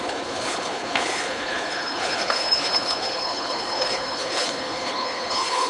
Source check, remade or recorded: remade